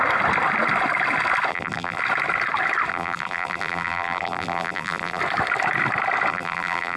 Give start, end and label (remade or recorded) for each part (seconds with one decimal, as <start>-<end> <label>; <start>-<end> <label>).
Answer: 0.0-1.5 recorded; 1.5-2.0 remade; 2.0-2.9 recorded; 2.9-5.2 remade; 5.2-6.3 recorded; 6.3-7.0 remade